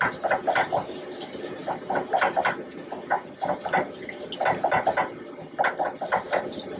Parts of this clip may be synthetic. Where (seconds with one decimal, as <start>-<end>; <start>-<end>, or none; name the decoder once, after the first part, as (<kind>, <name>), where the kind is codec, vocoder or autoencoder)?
none